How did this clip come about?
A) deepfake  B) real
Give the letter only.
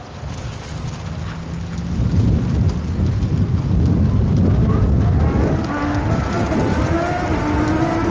B